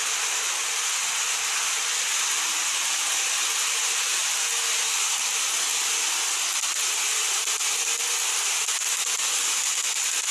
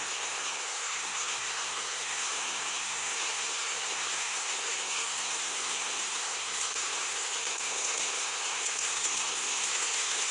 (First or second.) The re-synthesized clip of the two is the second